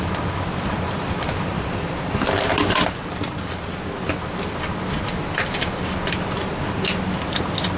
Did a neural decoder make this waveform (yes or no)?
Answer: no